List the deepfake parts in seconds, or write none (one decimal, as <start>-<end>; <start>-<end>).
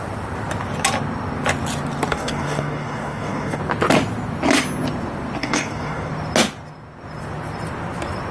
2.1-3.6; 5.4-6.1